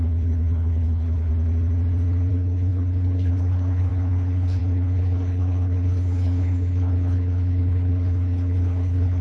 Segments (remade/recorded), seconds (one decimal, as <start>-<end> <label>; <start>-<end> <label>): 0.0-1.3 remade; 1.3-2.3 recorded; 2.3-9.2 remade